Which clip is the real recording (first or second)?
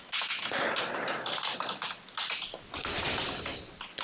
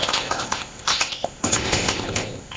first